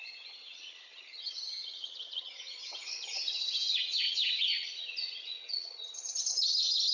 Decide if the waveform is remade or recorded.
remade